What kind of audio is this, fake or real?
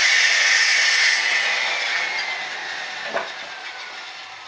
real